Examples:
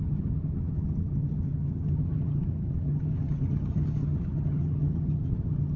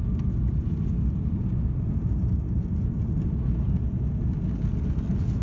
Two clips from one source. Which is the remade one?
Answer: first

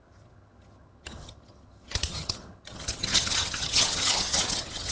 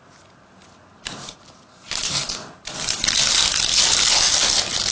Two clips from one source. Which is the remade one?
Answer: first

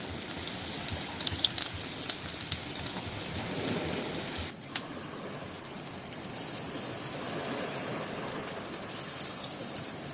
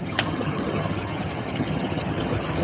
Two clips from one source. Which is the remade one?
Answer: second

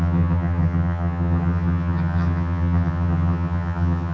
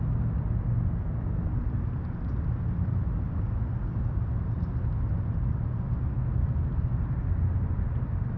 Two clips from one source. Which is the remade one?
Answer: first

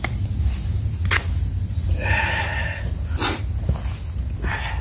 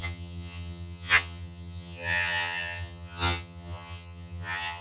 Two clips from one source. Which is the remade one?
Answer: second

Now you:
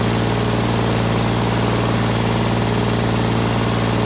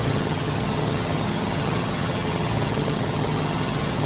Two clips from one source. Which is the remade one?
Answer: second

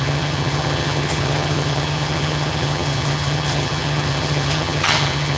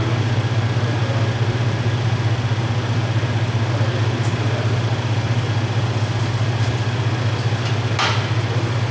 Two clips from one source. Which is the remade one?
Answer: first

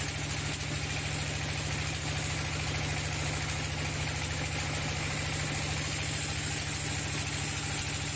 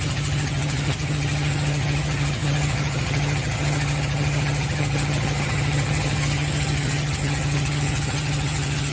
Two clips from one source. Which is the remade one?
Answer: second